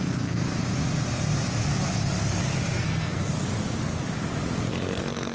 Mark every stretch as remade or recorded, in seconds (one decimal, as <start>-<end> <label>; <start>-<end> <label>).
0.0-0.4 remade; 0.4-2.8 recorded; 2.8-3.3 remade; 3.3-4.7 recorded; 4.7-5.3 remade